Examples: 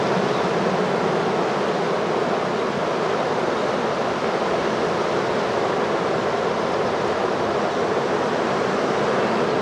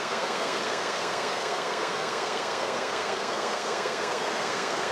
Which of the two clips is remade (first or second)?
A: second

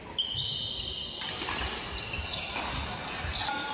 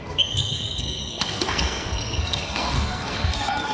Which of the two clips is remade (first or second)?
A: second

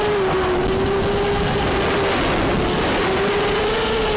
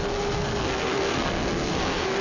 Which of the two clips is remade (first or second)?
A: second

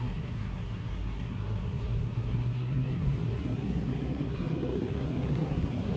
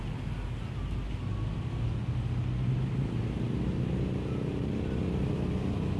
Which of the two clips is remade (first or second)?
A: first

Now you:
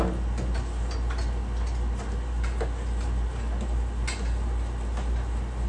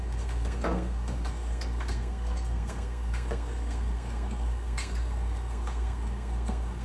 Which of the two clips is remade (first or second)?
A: second